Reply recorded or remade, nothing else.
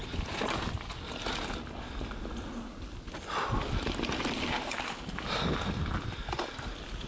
recorded